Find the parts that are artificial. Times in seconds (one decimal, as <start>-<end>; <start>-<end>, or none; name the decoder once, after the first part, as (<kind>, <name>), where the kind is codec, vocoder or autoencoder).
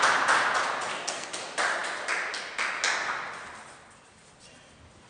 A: 0.9-1.4 (codec, SNAC)